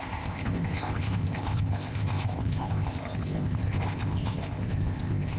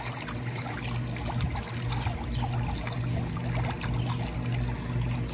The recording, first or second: second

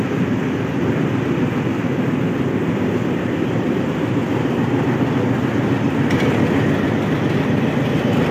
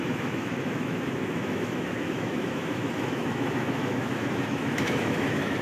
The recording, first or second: first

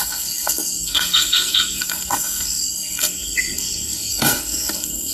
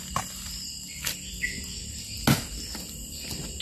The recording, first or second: second